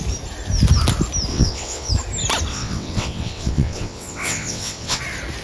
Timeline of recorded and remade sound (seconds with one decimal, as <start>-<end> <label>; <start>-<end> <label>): 0.0-1.3 recorded; 1.3-1.9 remade; 1.9-2.5 recorded; 2.5-5.0 remade; 5.0-5.4 recorded